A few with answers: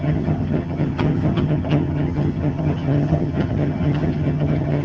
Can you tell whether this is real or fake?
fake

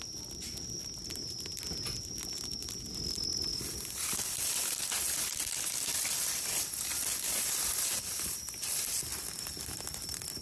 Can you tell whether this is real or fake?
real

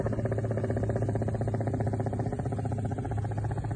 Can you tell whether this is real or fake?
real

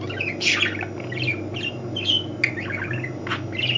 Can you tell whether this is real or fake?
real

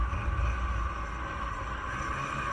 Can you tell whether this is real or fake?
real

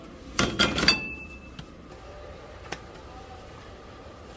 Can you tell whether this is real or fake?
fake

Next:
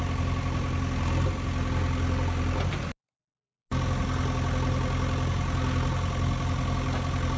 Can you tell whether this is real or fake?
real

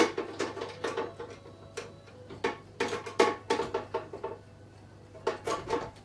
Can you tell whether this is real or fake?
real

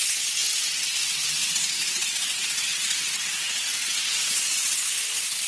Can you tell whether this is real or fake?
fake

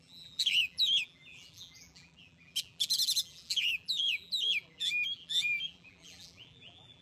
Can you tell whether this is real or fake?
fake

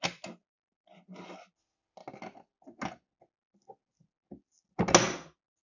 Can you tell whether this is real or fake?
real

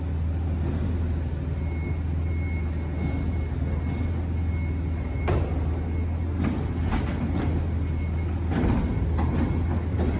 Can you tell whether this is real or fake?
real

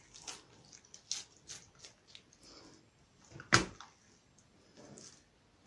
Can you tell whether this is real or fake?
real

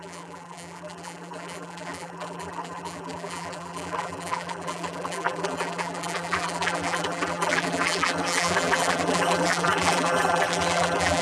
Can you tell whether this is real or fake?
fake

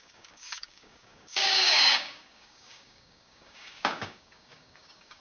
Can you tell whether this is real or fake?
fake